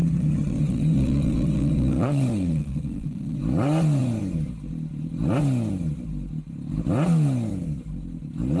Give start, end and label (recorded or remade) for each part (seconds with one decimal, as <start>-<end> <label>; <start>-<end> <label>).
0.0-3.4 remade; 3.4-8.6 recorded